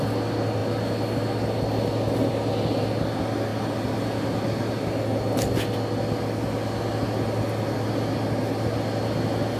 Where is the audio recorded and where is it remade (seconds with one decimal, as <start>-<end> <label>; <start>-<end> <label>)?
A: 0.0-9.6 recorded